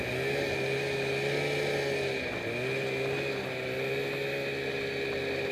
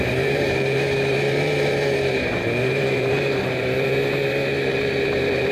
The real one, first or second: first